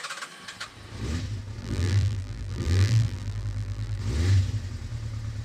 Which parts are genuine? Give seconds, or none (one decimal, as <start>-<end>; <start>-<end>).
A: 0.0-1.6; 4.0-5.4